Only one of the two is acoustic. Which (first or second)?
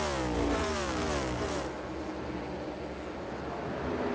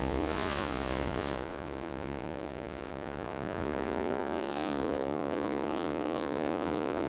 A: first